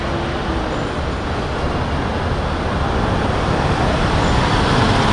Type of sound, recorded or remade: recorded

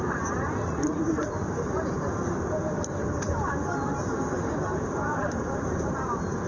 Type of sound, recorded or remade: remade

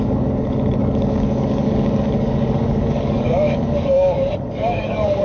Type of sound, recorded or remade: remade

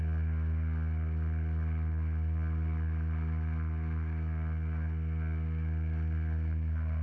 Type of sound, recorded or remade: recorded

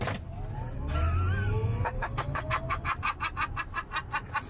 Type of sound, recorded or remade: recorded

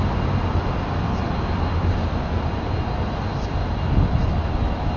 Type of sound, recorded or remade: recorded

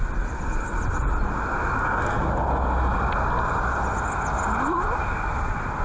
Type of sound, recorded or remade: recorded